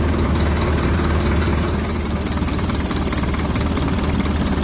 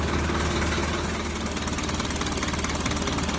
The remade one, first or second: first